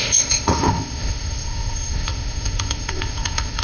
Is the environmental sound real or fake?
fake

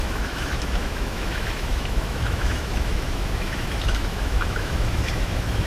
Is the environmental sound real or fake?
fake